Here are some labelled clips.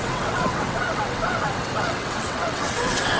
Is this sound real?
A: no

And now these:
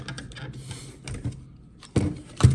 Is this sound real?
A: yes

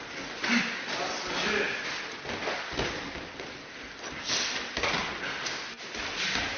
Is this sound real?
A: yes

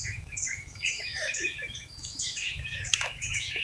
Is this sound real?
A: no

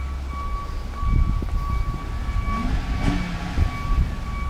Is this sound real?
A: yes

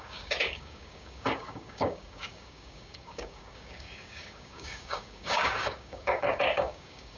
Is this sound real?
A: no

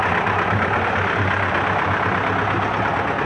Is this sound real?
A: yes